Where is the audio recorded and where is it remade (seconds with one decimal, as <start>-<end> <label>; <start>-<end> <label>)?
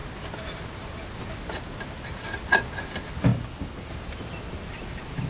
0.0-5.3 recorded